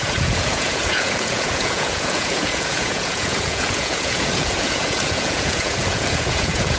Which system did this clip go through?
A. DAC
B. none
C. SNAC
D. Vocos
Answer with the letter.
D